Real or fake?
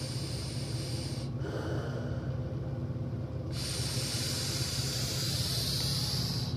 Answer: real